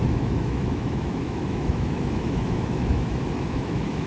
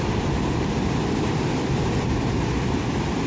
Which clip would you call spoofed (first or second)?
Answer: first